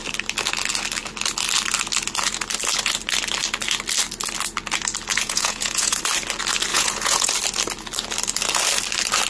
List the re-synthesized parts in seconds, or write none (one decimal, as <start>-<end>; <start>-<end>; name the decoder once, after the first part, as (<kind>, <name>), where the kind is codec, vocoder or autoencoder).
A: 5.1-6.0 (vocoder, Vocos); 6.7-7.3